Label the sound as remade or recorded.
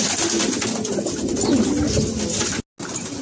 recorded